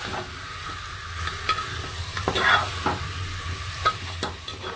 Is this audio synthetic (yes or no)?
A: no